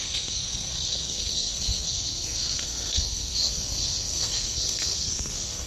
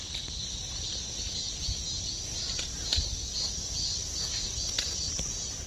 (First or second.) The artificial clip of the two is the first